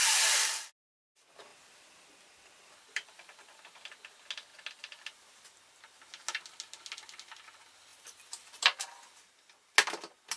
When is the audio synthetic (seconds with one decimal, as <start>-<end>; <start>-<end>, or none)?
1.5-3.6; 4.5-5.6; 7.9-9.1